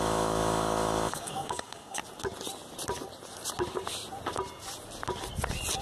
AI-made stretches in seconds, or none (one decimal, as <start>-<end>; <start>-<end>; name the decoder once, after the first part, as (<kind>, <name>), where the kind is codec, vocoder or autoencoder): 0.0-2.0 (codec, DAC)